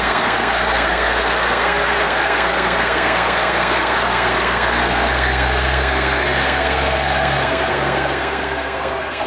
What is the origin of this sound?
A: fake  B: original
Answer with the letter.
A